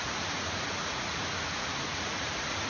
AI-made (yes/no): yes